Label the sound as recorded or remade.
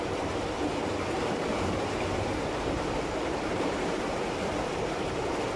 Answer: remade